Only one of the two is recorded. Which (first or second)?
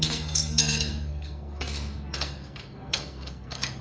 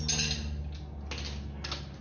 second